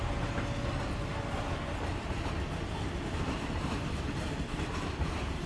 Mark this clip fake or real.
real